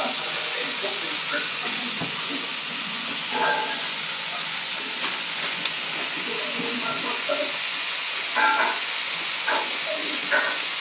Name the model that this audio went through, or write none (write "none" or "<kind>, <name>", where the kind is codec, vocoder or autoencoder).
vocoder, Vocos